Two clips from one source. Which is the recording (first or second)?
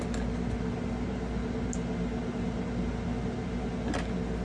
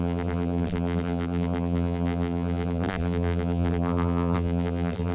first